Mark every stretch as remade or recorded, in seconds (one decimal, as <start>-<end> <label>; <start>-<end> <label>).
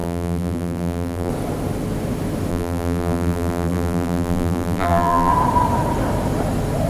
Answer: 0.0-1.3 remade; 1.3-2.5 recorded; 2.5-5.3 remade; 5.3-6.9 recorded